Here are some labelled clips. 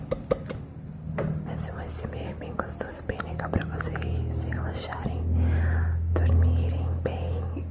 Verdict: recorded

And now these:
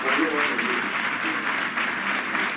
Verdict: recorded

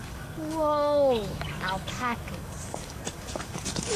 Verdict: remade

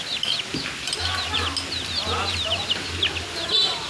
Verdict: recorded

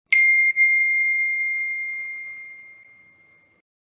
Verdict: recorded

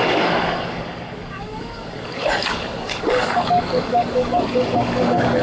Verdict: remade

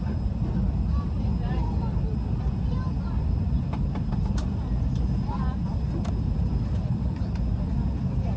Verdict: recorded